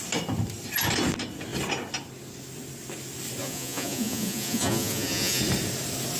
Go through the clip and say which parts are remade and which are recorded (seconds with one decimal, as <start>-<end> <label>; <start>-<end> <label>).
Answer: 0.0-3.4 recorded; 3.4-5.4 remade; 5.4-6.2 recorded